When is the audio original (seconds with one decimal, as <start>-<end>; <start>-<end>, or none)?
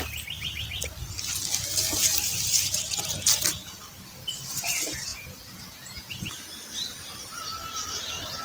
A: 0.0-5.1; 6.3-8.4